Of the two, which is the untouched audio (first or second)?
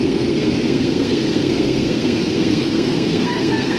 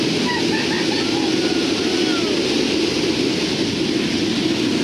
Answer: second